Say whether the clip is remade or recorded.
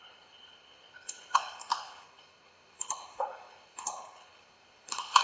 remade